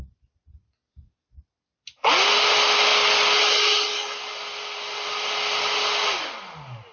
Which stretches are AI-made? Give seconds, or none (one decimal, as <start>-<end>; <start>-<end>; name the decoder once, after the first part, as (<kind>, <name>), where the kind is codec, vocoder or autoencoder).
none